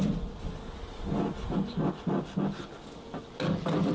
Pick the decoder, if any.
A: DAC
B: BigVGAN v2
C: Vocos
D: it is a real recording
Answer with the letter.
D